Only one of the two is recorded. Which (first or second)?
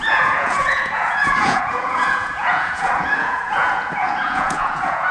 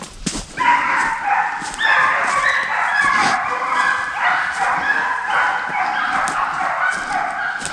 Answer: second